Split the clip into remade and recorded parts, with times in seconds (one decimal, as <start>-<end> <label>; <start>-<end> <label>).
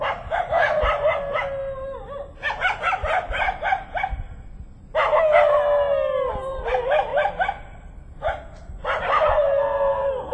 0.0-10.3 recorded